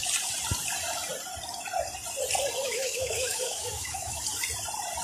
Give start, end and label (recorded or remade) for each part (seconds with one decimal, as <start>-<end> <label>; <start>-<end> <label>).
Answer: 0.0-2.6 recorded; 2.6-4.2 remade; 4.2-5.0 recorded